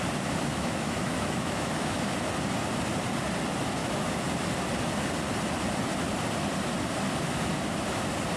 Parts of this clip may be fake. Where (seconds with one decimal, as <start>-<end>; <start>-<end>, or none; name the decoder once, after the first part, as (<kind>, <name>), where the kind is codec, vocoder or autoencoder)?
0.5-2.0 (autoencoder, DAC-VAE); 3.8-4.3

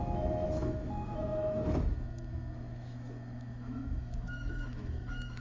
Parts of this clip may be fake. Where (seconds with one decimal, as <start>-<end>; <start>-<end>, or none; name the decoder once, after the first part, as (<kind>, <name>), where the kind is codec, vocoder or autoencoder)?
0.0-5.4 (autoencoder, DAC-VAE)

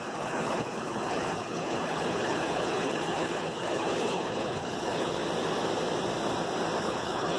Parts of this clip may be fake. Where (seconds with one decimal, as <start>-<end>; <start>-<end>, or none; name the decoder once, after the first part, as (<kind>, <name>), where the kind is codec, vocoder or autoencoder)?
0.0-5.2 (codec, HILCodec); 6.8-7.4

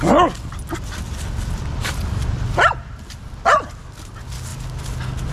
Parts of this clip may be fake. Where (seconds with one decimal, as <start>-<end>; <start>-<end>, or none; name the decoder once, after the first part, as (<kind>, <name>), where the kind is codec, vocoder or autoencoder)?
none

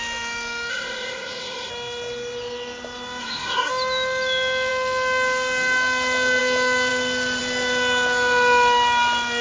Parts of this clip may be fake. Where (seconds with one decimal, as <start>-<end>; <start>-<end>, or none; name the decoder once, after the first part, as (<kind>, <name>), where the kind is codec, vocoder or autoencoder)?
0.7-1.7 (codec, SNAC); 3.2-3.7